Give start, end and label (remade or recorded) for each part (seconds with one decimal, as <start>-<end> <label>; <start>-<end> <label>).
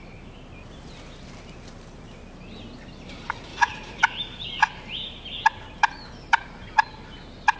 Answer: 0.0-3.5 recorded; 3.5-4.0 remade; 4.0-7.6 recorded